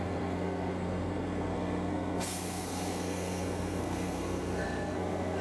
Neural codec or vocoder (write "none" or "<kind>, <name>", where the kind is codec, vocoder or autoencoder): codec, SNAC